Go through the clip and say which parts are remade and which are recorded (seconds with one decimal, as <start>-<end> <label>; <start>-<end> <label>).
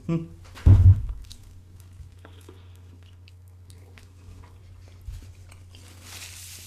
0.0-0.6 recorded; 0.6-4.6 remade; 4.6-6.7 recorded